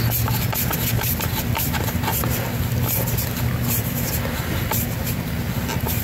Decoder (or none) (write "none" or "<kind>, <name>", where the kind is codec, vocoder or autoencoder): none